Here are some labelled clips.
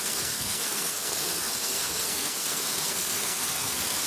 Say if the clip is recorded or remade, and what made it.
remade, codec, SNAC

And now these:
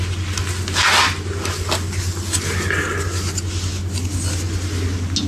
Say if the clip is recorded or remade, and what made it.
recorded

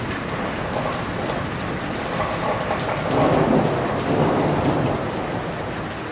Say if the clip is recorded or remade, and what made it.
recorded